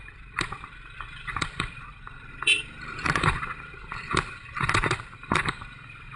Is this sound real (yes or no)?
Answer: no